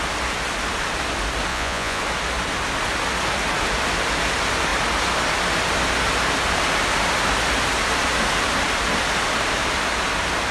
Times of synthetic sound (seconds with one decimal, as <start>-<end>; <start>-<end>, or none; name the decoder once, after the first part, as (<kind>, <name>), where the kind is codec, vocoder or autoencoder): 1.5-2.0 (vocoder, Vocos)